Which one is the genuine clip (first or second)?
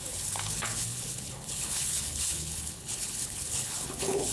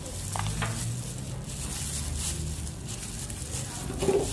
second